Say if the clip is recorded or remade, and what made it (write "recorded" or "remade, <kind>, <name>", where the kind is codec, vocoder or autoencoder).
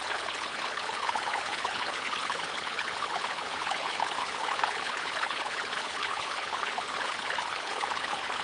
remade, codec, HILCodec